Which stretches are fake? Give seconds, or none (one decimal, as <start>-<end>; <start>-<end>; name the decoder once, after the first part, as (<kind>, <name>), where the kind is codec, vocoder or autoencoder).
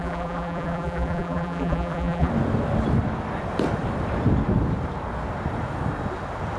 0.0-2.3 (vocoder, BigVGAN v2)